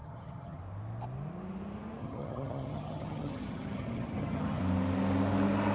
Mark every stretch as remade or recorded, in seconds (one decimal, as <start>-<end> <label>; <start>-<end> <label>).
0.0-0.6 remade; 0.6-2.0 recorded; 2.0-4.6 remade; 4.6-5.7 recorded